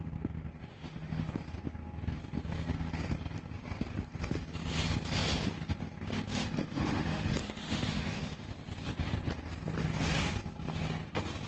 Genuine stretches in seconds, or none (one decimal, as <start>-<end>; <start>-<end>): 0.0-0.7; 1.3-6.3; 8.5-11.5